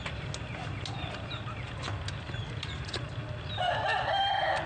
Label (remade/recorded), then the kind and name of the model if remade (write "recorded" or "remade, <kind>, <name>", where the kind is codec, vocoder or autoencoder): recorded